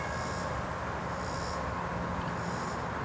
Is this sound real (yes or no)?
yes